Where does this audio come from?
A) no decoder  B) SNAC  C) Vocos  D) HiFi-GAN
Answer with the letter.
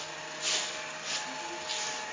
A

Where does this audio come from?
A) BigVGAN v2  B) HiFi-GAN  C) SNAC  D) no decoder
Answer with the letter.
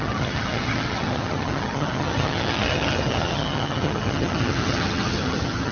B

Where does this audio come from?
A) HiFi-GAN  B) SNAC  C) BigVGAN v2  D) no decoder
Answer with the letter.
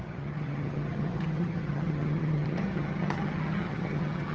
A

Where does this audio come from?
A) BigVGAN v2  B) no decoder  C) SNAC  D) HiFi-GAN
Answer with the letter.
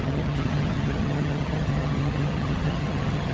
D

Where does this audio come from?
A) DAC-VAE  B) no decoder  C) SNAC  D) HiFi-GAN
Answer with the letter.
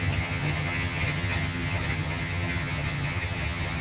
D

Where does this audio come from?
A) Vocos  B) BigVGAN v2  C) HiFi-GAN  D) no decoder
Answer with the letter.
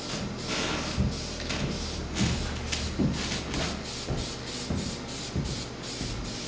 D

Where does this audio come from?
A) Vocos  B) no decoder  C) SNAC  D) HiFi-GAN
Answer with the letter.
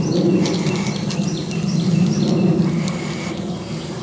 B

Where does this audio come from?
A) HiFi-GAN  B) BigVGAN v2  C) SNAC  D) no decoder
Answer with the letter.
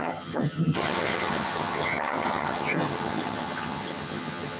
A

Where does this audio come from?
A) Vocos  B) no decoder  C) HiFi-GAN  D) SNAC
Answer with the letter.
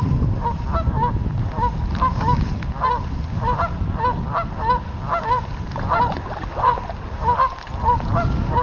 B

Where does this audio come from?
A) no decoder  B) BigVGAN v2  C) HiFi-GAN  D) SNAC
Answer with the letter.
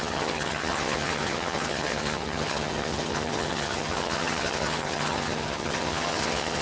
C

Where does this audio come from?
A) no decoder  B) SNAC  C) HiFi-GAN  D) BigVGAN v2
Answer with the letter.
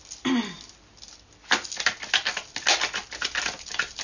A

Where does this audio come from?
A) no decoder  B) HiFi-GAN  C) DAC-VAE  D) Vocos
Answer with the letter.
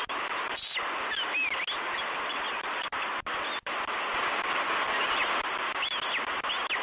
A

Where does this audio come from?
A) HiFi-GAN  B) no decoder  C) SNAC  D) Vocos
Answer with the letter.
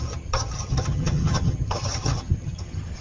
A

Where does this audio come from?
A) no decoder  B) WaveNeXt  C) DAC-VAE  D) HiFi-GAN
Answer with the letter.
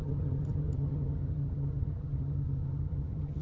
D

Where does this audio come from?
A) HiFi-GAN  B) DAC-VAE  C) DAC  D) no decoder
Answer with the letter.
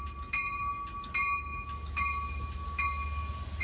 D